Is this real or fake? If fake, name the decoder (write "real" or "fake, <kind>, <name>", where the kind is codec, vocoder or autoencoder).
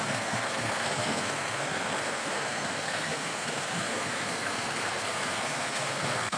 fake, codec, SNAC